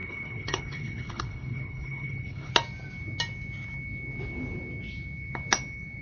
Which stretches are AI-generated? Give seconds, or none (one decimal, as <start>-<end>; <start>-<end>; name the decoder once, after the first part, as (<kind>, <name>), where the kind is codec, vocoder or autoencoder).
0.0-2.5 (codec, HILCodec)